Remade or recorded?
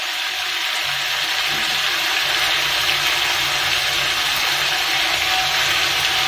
recorded